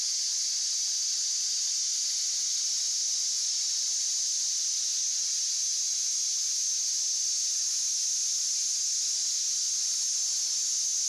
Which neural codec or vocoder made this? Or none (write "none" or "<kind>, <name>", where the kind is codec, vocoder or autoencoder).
none